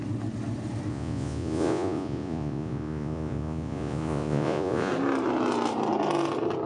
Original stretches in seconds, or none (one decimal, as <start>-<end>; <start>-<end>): 0.0-0.9; 4.9-6.7